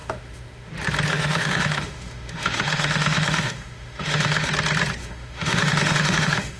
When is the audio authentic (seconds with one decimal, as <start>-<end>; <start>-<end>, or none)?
0.7-1.1; 4.5-5.0